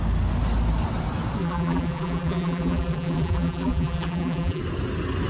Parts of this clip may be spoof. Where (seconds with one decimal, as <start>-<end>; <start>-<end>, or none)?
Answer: 1.4-4.6